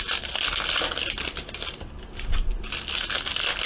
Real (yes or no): yes